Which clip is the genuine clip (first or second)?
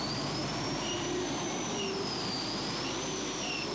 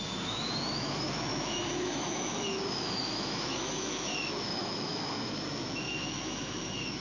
first